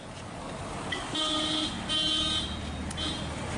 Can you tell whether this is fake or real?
real